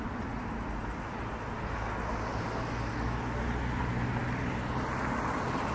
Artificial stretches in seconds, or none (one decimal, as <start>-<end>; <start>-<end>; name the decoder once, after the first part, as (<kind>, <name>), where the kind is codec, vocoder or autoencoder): none